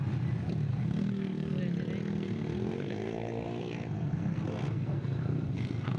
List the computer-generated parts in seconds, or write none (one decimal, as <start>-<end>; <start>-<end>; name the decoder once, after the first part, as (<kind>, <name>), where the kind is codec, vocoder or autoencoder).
0.7-1.6 (codec, SNAC); 2.1-6.0